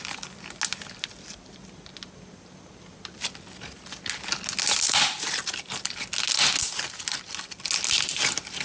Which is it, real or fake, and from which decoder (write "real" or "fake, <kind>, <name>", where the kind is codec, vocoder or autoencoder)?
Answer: real